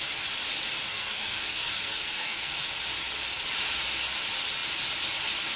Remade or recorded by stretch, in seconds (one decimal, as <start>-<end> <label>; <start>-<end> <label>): 0.0-0.9 recorded; 0.9-2.7 remade; 2.7-5.6 recorded

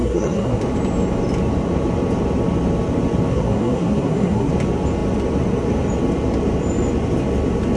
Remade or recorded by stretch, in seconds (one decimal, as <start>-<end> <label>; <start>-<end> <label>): 0.0-0.6 remade; 0.6-3.3 recorded; 3.3-4.5 remade; 4.5-7.8 recorded

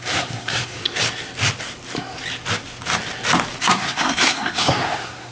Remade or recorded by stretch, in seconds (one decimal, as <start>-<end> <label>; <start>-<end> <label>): 0.0-0.8 remade; 0.8-3.6 recorded; 3.6-5.3 remade

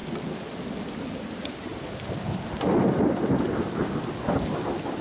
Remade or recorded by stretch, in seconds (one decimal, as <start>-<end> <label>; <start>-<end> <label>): 0.0-5.0 recorded

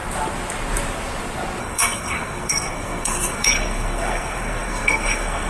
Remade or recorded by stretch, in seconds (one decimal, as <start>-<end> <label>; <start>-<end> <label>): 0.0-1.6 recorded; 1.6-5.5 remade

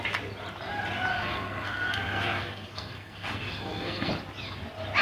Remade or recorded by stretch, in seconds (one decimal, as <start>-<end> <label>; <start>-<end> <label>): 0.0-1.1 recorded; 1.1-4.1 remade; 4.1-5.0 recorded

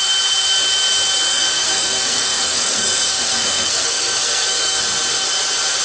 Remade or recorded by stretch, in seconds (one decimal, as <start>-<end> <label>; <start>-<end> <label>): 0.0-1.3 recorded; 1.3-4.8 remade; 4.8-5.8 recorded

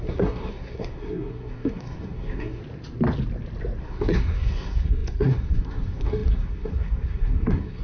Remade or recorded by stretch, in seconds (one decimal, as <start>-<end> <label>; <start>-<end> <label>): 0.0-2.6 remade; 2.6-3.8 recorded; 3.8-7.8 remade